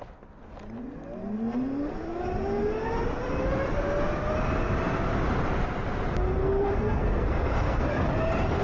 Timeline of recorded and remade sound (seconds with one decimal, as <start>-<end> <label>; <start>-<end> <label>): 0.0-6.4 recorded; 6.4-7.9 remade; 7.9-8.6 recorded